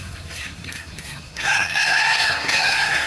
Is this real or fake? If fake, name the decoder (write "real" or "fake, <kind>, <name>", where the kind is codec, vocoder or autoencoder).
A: fake, codec, SNAC